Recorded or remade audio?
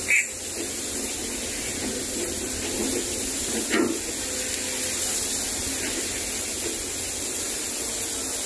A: recorded